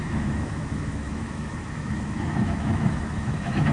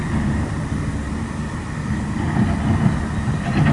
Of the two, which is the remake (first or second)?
first